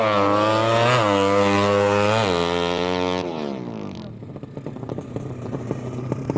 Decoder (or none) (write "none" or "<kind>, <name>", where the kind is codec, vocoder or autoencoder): none